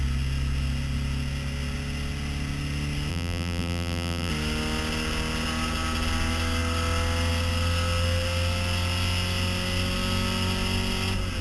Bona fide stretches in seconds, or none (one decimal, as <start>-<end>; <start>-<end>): 0.0-3.1; 4.3-11.4